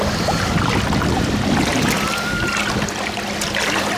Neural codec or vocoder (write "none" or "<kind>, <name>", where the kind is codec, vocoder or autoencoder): none